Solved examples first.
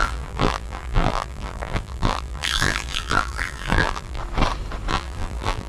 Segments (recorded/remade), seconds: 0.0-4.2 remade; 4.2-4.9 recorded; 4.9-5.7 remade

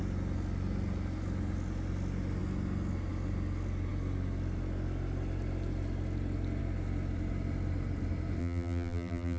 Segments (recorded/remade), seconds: 0.0-8.4 recorded; 8.4-9.4 remade

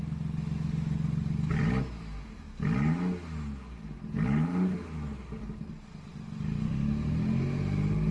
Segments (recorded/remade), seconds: 0.0-8.1 recorded

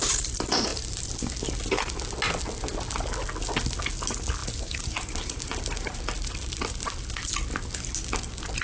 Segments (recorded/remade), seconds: 0.0-4.4 recorded; 4.4-6.0 remade; 6.0-8.6 recorded

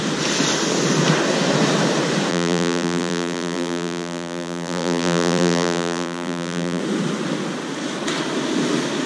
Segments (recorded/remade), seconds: 0.0-2.3 recorded; 2.3-6.8 remade; 6.8-9.1 recorded

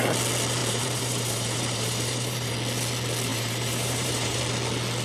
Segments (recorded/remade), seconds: 0.0-0.6 recorded; 0.6-2.5 remade; 2.5-3.3 recorded; 3.3-4.4 remade; 4.4-5.0 recorded